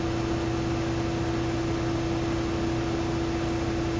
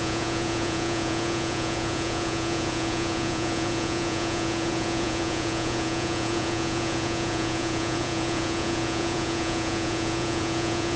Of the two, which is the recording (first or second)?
first